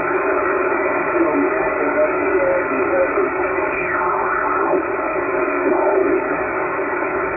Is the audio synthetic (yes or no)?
yes